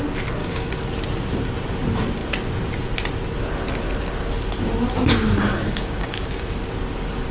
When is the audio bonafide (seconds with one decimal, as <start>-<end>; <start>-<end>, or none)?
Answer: 0.0-0.4; 0.9-5.5; 6.6-7.3